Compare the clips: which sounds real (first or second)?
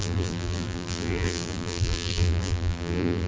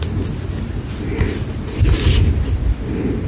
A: second